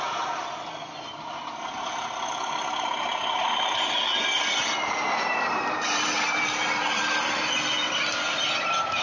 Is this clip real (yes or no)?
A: yes